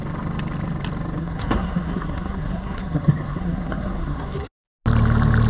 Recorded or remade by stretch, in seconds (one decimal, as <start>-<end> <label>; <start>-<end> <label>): 0.0-1.2 recorded; 1.2-4.5 remade; 4.5-5.5 recorded